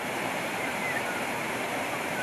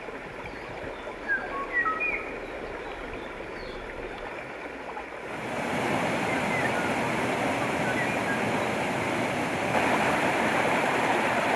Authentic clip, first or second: second